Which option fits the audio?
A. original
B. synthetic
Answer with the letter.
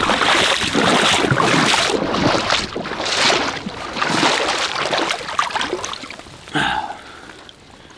A